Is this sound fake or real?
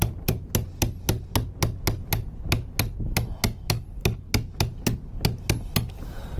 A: real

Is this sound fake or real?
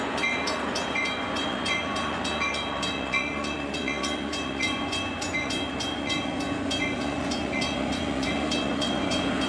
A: fake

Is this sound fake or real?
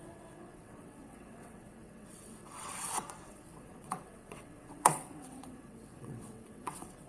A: fake